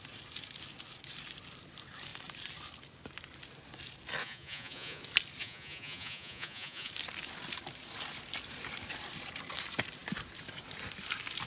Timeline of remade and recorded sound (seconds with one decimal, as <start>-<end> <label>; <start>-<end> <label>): 0.0-4.2 recorded; 4.2-5.0 remade; 5.0-5.4 recorded; 5.4-6.9 remade; 6.9-11.5 recorded